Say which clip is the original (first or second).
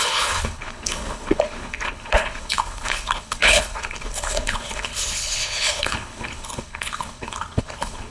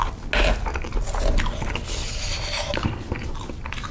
second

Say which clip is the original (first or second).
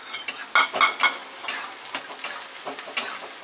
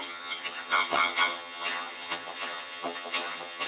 first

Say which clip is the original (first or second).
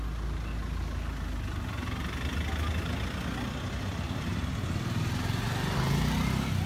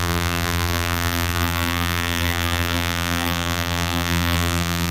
first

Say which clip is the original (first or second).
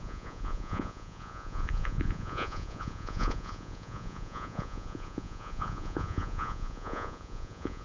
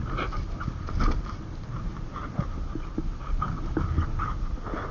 second